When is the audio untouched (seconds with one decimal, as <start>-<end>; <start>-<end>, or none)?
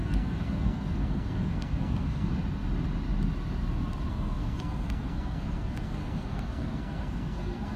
2.3-4.1